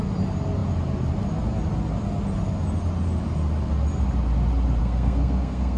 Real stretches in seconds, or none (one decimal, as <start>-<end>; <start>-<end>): 0.0-4.8